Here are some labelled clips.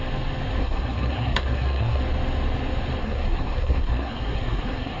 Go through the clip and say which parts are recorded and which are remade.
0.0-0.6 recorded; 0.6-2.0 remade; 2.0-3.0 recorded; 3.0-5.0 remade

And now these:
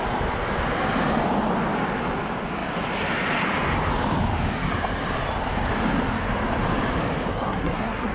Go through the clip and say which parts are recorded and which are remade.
0.0-7.3 recorded; 7.3-8.1 remade